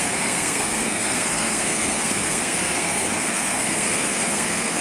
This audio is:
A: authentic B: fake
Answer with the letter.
B